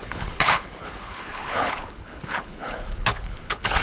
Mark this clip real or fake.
fake